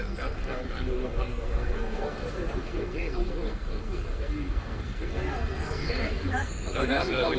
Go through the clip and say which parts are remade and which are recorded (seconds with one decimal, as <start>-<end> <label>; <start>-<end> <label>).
0.0-7.4 remade